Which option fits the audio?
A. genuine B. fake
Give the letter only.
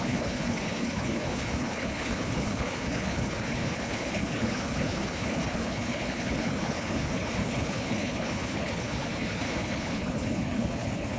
B